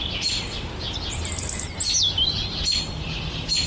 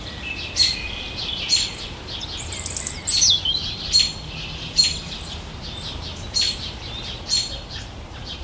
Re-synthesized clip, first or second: second